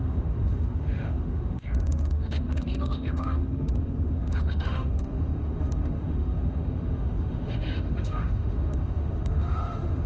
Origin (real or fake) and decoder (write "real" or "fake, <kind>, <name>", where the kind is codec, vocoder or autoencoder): fake, autoencoder, DAC-VAE